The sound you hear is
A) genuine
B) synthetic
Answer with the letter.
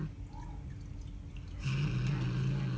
A